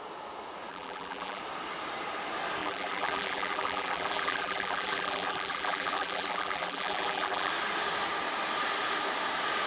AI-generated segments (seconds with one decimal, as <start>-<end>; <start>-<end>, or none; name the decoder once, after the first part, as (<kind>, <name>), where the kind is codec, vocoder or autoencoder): 0.7-1.4 (vocoder, BigVGAN v2); 2.6-7.5